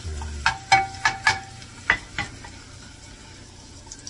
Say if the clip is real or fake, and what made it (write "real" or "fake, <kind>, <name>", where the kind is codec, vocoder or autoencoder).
real